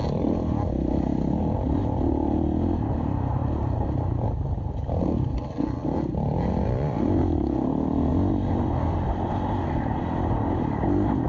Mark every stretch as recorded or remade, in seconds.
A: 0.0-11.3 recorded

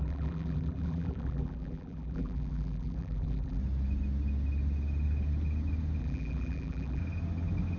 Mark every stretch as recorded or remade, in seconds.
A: 0.0-3.6 remade; 3.6-6.0 recorded; 6.0-7.0 remade; 7.0-7.8 recorded

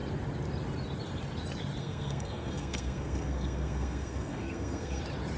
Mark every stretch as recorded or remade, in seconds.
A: 0.0-1.8 recorded; 1.8-5.0 remade; 5.0-5.4 recorded